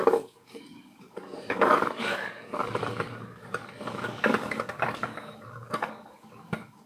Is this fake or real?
fake